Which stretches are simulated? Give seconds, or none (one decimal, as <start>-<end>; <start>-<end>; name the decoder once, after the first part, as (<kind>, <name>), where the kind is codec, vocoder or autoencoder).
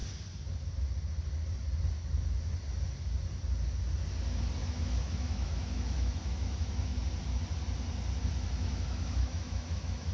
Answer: 4.6-7.0 (autoencoder, DAC-VAE); 8.2-10.1